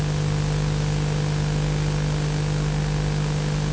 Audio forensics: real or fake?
real